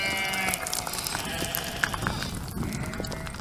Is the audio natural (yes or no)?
yes